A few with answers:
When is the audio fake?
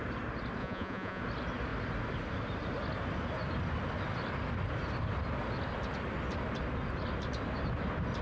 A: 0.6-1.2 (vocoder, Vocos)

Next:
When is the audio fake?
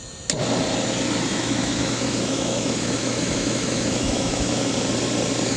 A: 1.3-4.7 (autoencoder, DAC-VAE)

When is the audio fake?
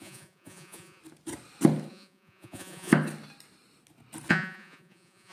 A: 0.0-1.0 (vocoder, Vocos); 1.9-2.9; 4.3-5.3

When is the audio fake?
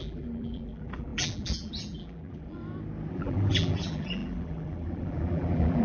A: 0.0-2.6 (vocoder, BigVGAN v2); 3.1-5.8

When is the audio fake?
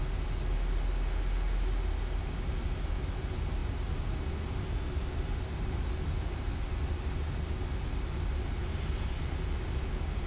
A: none